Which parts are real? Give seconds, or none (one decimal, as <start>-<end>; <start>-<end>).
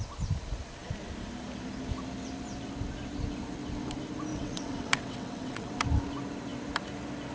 0.0-4.3; 5.8-7.3